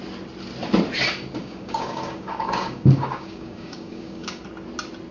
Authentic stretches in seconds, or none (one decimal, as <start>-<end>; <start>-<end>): 0.0-1.4; 4.4-5.1